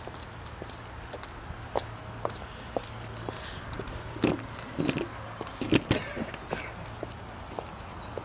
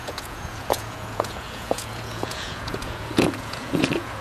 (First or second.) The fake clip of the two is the second